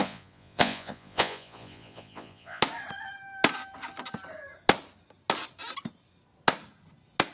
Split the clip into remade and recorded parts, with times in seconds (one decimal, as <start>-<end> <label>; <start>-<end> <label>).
0.0-2.6 remade; 2.6-7.3 recorded